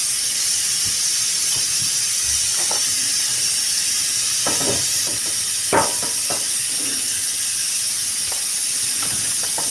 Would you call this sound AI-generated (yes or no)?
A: no